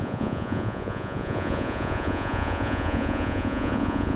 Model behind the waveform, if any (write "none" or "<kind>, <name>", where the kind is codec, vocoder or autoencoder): vocoder, Vocos